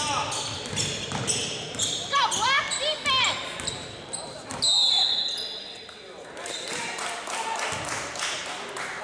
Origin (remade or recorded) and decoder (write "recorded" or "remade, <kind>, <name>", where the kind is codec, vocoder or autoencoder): recorded